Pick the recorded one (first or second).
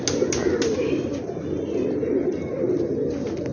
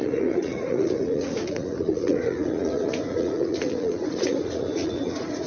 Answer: first